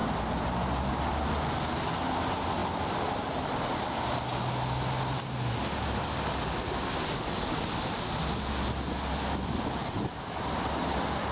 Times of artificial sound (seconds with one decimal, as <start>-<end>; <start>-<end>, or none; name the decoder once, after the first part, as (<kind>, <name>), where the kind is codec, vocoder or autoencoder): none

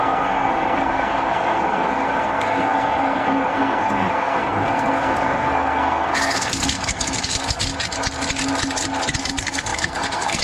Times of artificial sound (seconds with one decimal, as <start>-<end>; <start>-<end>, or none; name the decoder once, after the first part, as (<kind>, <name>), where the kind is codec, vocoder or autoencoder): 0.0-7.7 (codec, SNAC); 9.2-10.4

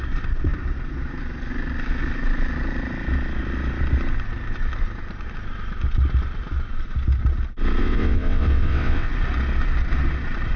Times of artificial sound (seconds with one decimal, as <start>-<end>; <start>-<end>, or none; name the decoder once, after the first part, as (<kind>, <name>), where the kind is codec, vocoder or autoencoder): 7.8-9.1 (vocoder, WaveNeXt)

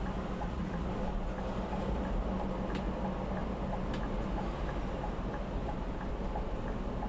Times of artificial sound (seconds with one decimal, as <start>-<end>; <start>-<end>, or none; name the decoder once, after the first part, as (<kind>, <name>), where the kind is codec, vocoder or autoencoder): 0.4-0.9 (vocoder, Vocos)

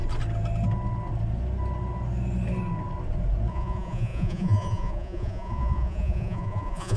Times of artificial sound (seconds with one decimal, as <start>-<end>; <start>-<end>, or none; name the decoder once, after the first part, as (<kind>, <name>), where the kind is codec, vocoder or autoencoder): 3.5-7.0 (vocoder, Vocos)